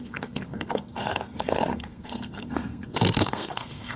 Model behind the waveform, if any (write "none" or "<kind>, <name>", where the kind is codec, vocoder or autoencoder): codec, SNAC